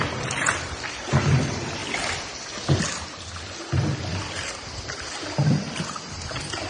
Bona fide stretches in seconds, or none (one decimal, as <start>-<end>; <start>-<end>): 1.8-5.8